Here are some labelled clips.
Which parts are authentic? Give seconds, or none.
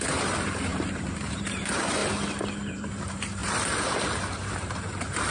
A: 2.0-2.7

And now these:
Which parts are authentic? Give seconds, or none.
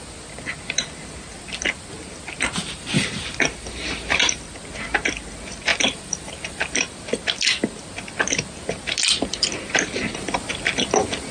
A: 0.0-2.6; 4.4-5.7; 6.8-11.3